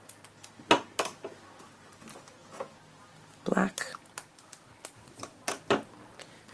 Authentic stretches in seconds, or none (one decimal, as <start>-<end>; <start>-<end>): 0.0-6.5